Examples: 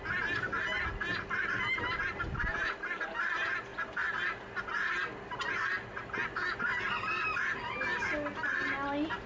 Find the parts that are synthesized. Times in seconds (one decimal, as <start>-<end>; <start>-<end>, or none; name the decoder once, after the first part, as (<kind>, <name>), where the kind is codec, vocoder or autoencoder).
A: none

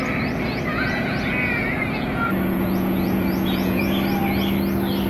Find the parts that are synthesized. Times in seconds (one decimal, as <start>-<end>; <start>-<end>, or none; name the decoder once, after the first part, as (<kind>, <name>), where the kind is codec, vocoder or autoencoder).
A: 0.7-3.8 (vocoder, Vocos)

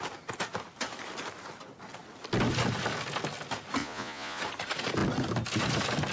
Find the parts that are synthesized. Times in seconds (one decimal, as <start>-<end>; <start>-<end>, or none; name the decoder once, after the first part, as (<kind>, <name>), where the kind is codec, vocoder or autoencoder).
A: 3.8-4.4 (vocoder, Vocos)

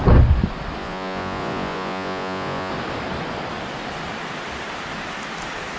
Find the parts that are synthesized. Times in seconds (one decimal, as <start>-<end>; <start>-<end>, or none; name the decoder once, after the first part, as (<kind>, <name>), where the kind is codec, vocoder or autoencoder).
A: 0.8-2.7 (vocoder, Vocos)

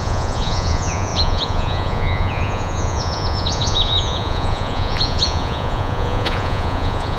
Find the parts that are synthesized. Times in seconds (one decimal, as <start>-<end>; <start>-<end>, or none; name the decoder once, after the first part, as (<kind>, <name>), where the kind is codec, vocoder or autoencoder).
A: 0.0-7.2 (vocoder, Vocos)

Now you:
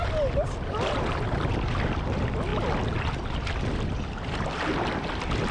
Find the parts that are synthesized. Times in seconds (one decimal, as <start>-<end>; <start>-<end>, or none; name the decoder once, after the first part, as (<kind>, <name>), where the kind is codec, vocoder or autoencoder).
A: none

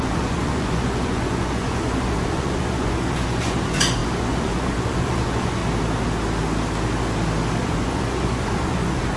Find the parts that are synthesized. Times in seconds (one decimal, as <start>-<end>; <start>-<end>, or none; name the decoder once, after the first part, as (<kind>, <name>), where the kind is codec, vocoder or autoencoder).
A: 0.0-5.6 (vocoder, Vocos); 7.6-9.2